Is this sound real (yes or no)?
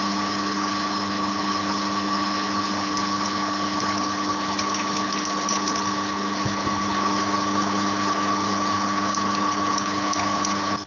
no